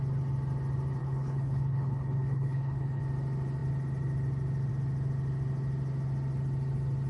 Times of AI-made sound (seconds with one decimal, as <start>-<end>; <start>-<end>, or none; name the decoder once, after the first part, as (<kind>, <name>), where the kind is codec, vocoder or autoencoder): 1.0-3.0 (codec, HILCodec)